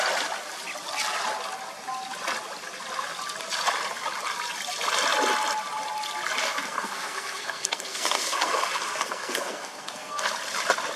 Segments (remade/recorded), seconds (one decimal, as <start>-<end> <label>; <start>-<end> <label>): 0.0-6.4 recorded; 6.4-10.3 remade; 10.3-11.0 recorded

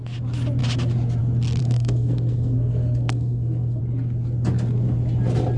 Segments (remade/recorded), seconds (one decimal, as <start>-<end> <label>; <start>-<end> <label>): 0.0-1.6 recorded; 1.6-3.8 remade; 3.8-5.6 recorded

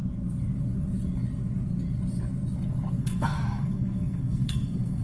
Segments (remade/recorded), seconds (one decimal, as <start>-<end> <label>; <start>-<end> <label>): 0.0-3.0 recorded; 3.0-5.0 remade

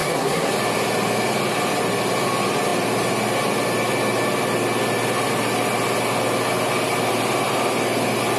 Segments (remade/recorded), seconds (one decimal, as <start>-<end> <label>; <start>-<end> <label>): 0.0-0.5 remade; 0.5-8.4 recorded

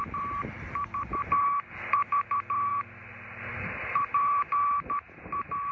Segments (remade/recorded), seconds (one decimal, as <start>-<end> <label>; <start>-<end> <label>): 0.0-5.7 recorded

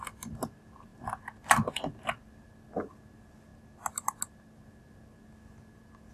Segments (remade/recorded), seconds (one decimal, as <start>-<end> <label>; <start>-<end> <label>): 0.0-6.1 recorded

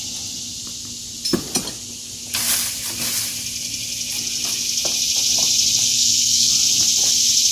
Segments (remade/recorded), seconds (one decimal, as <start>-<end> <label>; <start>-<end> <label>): 0.0-5.8 recorded; 5.8-6.5 remade; 6.5-7.5 recorded

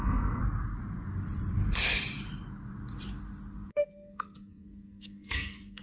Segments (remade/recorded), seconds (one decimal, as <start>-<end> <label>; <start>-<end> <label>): 0.0-0.4 remade; 0.4-3.7 recorded; 3.7-5.8 remade